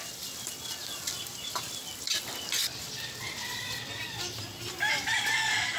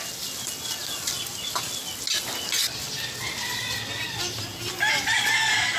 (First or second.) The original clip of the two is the second